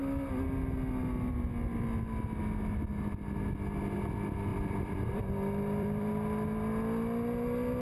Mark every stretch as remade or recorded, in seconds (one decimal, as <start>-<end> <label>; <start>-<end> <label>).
0.0-4.5 recorded; 4.5-6.1 remade; 6.1-7.8 recorded